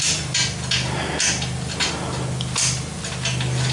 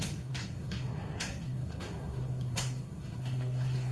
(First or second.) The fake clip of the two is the second